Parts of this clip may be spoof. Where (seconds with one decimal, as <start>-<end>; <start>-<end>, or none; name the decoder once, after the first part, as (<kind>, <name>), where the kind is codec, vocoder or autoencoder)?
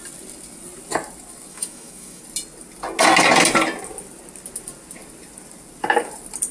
1.5-2.2 (autoencoder, DAC-VAE)